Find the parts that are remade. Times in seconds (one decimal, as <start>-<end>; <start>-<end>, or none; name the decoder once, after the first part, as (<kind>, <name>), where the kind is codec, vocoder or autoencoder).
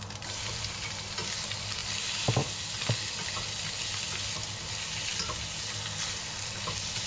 none